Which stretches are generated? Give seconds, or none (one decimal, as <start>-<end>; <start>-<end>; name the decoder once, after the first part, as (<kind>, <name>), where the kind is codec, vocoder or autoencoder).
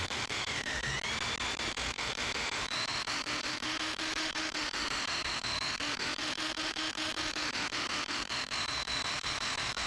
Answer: 0.0-0.9 (autoencoder, DAC-VAE); 1.7-9.9